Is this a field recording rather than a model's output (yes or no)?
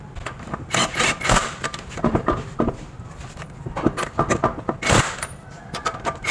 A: yes